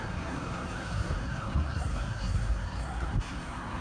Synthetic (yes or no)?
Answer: yes